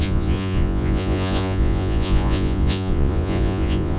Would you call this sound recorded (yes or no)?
no